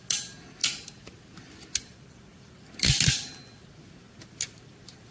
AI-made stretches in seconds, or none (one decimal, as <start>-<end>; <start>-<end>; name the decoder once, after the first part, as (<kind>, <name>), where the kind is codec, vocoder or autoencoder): none